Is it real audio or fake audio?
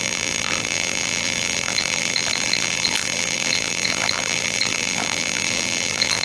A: fake